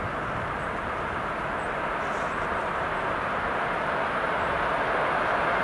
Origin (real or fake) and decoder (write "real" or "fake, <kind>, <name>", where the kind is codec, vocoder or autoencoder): real